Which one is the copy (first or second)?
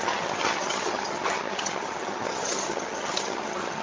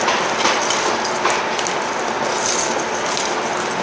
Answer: first